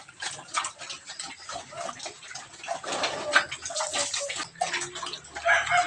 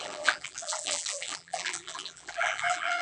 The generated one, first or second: second